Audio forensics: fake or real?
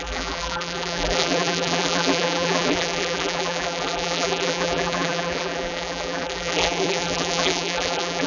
fake